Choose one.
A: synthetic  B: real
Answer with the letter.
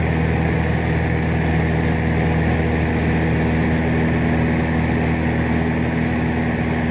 B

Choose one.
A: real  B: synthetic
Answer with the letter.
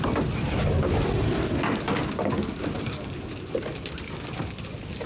A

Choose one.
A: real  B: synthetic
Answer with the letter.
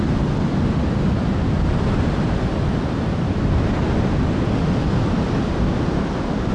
A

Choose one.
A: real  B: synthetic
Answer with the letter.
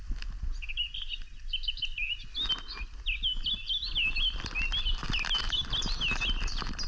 A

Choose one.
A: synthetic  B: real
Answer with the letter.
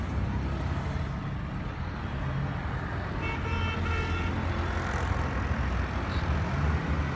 B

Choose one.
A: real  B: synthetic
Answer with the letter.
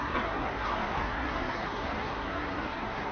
B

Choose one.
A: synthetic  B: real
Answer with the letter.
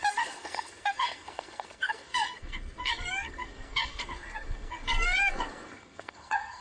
A